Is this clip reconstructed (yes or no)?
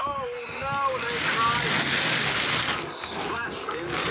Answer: no